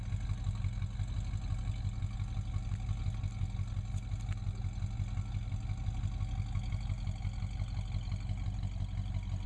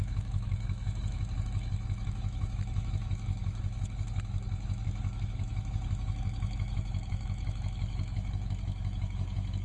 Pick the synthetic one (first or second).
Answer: second